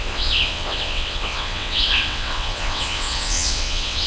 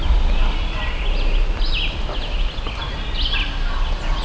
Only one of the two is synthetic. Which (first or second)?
first